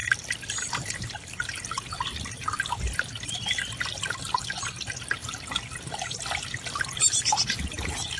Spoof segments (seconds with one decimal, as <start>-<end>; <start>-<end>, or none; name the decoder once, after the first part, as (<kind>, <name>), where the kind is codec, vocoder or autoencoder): none